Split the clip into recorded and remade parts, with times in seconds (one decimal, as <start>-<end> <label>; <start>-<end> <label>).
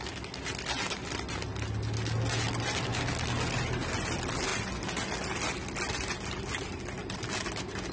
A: 0.0-7.9 recorded